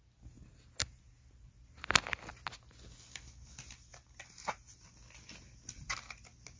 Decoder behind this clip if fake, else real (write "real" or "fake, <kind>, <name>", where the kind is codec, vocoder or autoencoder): real